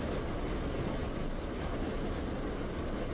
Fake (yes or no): no